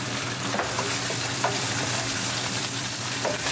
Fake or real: fake